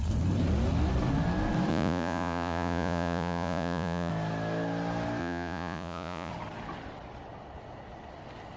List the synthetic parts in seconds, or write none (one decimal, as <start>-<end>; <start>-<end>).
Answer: 1.7-4.1; 5.2-6.3